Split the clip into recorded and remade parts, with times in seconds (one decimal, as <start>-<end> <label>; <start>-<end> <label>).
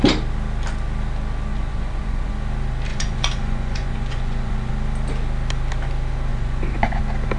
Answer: 0.0-1.5 recorded; 1.5-2.3 remade; 2.3-2.9 recorded; 2.9-4.7 remade; 4.7-6.3 recorded; 6.3-7.0 remade; 7.0-7.4 recorded